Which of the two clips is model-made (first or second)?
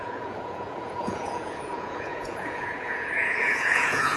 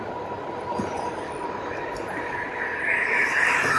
first